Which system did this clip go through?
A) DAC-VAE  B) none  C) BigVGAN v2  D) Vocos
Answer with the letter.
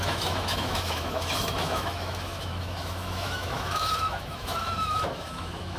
A